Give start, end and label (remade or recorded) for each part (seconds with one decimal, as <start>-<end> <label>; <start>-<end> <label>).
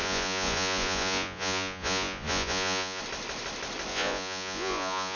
0.0-3.0 remade; 3.0-3.9 recorded; 3.9-5.2 remade